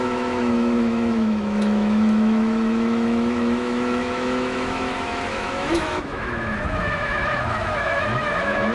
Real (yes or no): no